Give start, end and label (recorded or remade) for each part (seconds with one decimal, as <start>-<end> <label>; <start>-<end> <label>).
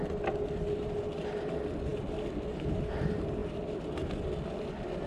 0.0-5.1 recorded